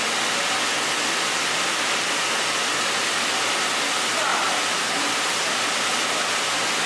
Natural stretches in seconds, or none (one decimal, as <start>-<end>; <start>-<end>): 0.0-6.9